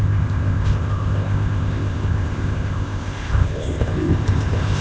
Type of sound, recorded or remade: remade